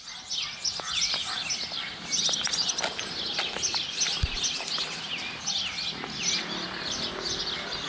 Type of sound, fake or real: real